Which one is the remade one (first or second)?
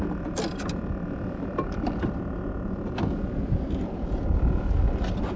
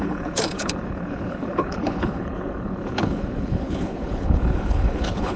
second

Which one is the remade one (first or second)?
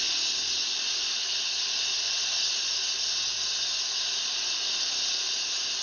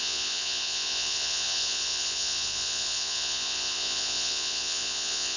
second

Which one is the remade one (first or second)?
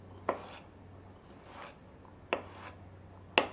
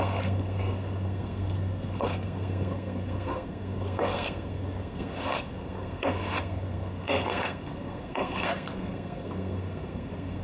second